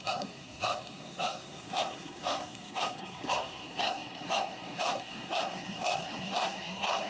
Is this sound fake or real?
fake